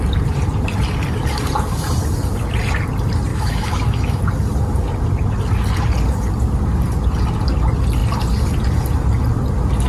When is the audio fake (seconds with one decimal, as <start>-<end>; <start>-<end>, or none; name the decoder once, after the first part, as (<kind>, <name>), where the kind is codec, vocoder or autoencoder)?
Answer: 3.3-4.2 (autoencoder, DAC-VAE)